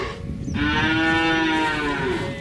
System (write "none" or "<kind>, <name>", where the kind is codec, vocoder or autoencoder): none